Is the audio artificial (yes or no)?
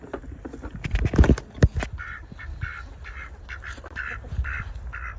no